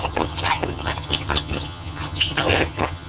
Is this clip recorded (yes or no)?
no